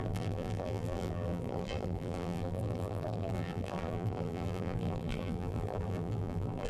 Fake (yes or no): yes